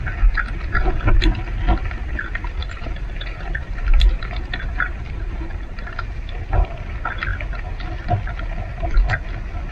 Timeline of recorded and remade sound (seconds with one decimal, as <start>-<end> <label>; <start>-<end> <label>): 0.0-2.6 recorded; 2.6-6.2 remade; 6.2-9.7 recorded